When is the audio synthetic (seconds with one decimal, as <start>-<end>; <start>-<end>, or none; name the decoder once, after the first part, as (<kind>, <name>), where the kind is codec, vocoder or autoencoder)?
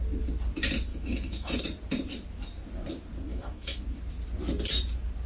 0.9-1.6 (autoencoder, DAC-VAE); 3.3-3.8